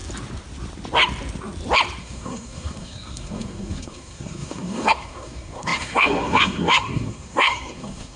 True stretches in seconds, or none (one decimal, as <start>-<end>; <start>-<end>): 0.0-2.0